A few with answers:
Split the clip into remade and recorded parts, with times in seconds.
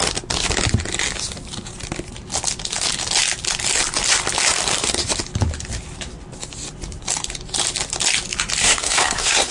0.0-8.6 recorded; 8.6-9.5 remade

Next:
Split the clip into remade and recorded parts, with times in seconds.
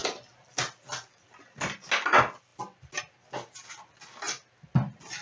0.0-5.2 recorded